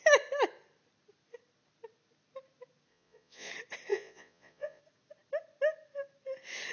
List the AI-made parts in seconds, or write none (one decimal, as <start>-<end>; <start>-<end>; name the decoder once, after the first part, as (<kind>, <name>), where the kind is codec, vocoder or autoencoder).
2.9-3.5 (vocoder, Vocos); 3.9-4.8